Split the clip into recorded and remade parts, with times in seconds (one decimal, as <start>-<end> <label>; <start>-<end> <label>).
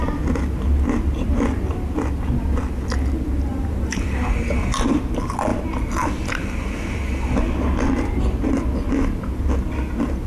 0.0-3.5 recorded; 3.5-4.1 remade; 4.1-10.3 recorded